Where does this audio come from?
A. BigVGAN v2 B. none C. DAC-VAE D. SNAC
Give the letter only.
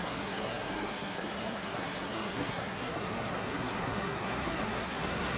D